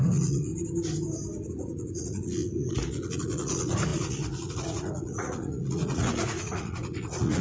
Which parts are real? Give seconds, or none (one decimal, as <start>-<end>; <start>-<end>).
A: 0.5-1.5